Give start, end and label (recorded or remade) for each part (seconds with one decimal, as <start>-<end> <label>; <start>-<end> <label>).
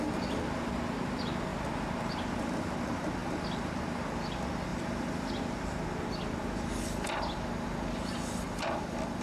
0.0-1.5 recorded; 1.5-2.6 remade; 2.6-3.2 recorded; 3.2-4.0 remade; 4.0-9.2 recorded